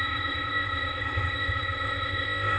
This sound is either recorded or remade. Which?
remade